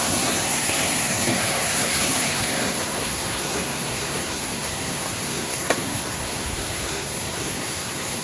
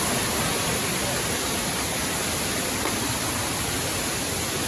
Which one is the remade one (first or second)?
first